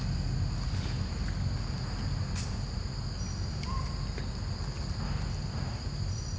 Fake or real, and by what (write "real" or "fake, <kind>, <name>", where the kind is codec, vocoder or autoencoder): real